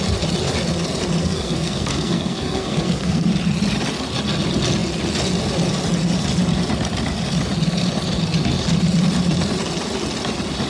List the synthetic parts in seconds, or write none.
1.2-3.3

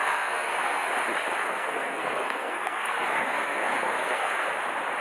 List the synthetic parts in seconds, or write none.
0.0-0.9; 1.5-4.5

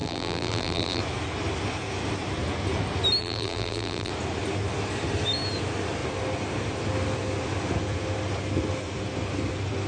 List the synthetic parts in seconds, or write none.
0.0-1.0; 3.2-4.1

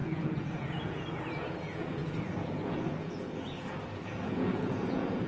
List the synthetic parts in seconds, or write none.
0.0-5.3

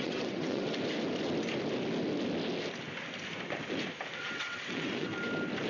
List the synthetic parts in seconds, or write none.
0.0-0.7; 4.1-5.1

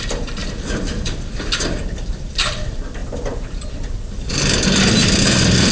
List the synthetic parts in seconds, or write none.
0.0-5.7